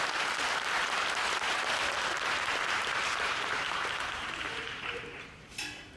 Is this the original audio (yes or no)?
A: no